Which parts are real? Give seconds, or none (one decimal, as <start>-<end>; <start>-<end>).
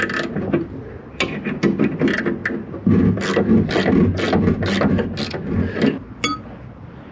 0.0-7.1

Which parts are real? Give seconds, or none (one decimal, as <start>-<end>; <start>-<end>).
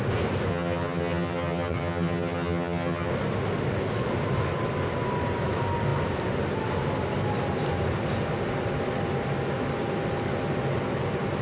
0.0-0.5; 3.1-11.4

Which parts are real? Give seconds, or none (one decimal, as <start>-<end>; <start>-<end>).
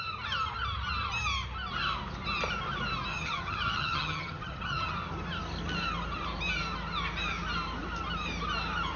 0.0-3.1; 4.9-9.0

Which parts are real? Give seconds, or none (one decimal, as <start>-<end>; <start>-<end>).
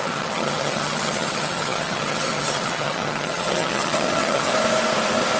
4.5-5.4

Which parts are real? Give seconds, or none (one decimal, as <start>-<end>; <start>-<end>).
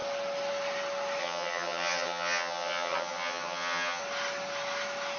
0.0-1.2; 4.0-5.2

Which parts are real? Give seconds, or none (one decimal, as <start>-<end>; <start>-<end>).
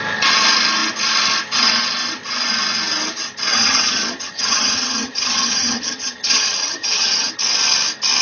0.0-3.5; 7.3-8.2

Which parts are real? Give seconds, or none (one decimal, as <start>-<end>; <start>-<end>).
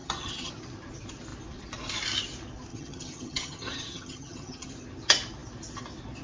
0.5-2.7; 4.7-6.2